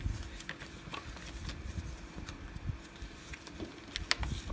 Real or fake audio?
real